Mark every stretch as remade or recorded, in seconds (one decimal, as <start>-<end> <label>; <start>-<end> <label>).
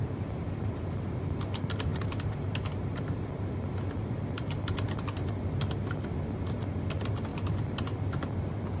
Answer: 0.0-8.8 recorded